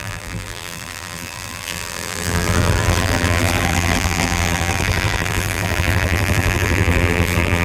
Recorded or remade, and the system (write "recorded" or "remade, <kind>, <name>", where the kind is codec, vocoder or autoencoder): remade, vocoder, BigVGAN v2